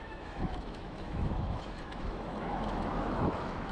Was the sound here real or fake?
fake